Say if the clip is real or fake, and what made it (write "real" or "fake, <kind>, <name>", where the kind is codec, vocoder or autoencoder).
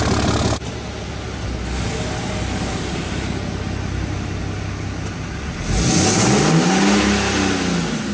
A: real